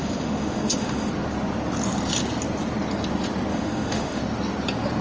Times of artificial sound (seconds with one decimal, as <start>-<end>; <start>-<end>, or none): 0.0-1.1; 3.5-4.2